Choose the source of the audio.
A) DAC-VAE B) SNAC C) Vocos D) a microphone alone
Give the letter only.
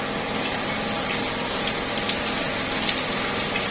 D